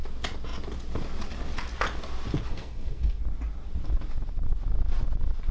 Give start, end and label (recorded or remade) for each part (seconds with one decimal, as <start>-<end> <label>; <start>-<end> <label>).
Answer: 0.0-2.5 recorded; 2.5-3.2 remade; 3.2-5.5 recorded